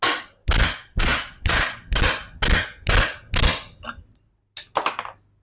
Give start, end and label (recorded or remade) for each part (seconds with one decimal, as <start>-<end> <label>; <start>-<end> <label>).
0.0-0.8 recorded; 0.8-1.8 remade; 1.8-5.4 recorded